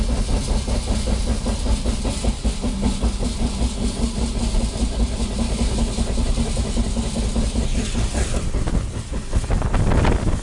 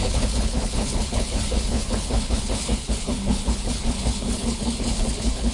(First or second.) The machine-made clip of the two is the second